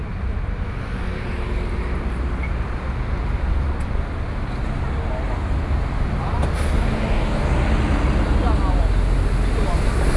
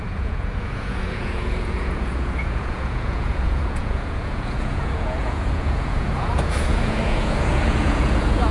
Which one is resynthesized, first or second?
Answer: second